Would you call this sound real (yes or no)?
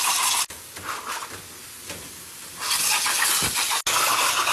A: yes